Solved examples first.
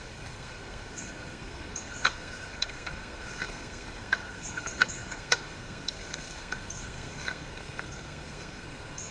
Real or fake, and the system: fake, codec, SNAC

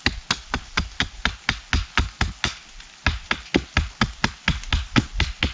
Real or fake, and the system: real